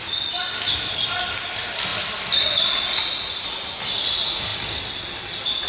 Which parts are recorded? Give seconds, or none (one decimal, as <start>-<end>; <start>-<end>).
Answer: 0.0-5.7